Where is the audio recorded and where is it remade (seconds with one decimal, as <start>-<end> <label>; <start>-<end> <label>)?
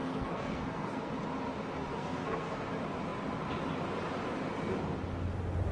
0.0-1.1 remade; 1.1-1.9 recorded; 1.9-2.7 remade; 2.7-5.7 recorded